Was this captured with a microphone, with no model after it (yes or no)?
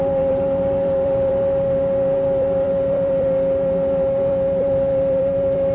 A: no